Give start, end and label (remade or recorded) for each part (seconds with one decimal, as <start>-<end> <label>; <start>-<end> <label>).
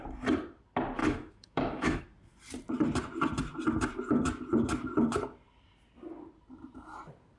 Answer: 0.0-1.0 recorded; 1.0-2.0 remade; 2.0-7.4 recorded